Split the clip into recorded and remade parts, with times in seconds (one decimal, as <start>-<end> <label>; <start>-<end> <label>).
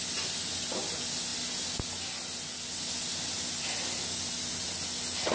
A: 0.0-5.3 recorded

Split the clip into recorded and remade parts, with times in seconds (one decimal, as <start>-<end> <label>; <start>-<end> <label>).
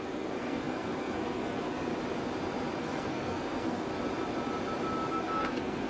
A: 0.0-1.9 remade; 1.9-2.8 recorded; 2.8-3.9 remade; 3.9-5.1 recorded; 5.1-5.9 remade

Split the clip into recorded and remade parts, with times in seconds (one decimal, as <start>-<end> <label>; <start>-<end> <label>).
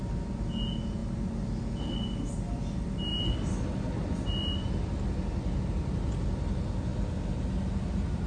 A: 0.0-8.3 recorded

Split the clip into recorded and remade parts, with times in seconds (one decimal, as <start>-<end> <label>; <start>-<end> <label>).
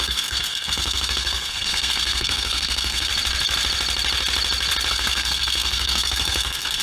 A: 0.0-3.1 remade; 3.1-4.9 recorded; 4.9-6.8 remade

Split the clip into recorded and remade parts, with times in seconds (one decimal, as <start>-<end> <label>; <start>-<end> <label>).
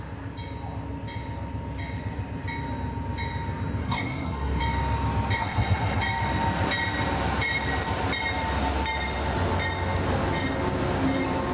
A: 0.0-3.8 recorded; 3.8-4.6 remade; 4.6-5.4 recorded; 5.4-6.0 remade; 6.0-11.5 recorded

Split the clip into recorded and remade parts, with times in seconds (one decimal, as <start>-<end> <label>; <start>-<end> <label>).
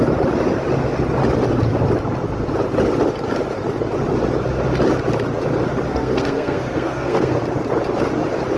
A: 0.0-5.9 recorded; 5.9-7.4 remade; 7.4-8.6 recorded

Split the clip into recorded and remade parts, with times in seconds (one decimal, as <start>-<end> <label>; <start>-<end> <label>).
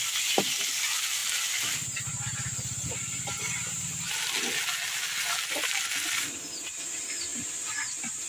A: 0.0-8.3 recorded